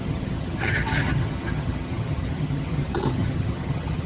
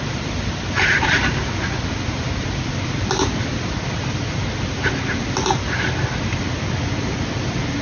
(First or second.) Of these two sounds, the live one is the second